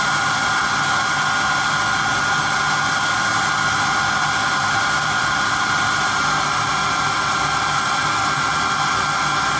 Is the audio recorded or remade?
recorded